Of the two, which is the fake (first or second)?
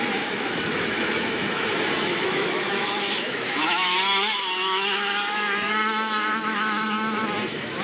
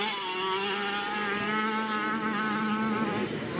first